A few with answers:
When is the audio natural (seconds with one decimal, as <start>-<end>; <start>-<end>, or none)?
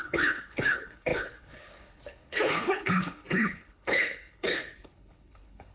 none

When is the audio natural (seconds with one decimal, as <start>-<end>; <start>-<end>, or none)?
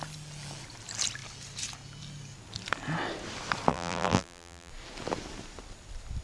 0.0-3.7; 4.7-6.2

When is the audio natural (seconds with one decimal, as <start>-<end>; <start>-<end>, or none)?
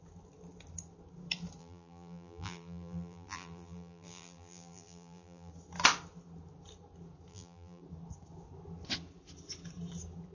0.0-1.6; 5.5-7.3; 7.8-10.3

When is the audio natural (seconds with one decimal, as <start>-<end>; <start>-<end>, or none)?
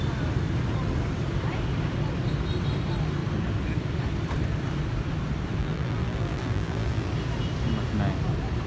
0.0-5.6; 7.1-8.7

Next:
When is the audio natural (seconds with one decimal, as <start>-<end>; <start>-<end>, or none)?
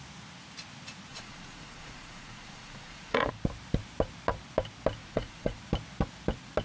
0.0-1.1; 3.3-5.0; 5.6-6.6